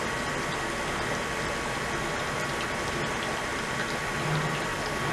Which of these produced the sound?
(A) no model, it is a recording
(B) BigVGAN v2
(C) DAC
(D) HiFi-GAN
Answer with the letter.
A